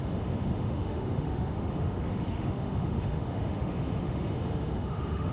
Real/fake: fake